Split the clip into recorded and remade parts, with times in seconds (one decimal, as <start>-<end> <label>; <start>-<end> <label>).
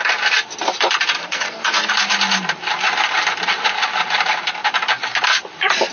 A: 0.0-1.2 recorded; 1.2-1.9 remade; 1.9-5.9 recorded